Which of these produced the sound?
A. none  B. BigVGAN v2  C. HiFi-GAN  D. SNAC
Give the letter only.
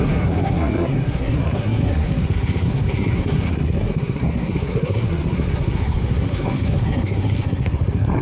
D